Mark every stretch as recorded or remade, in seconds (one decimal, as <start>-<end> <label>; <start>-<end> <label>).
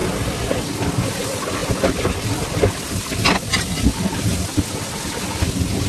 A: 0.0-5.9 recorded